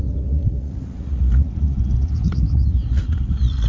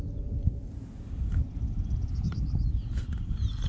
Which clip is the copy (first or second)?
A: first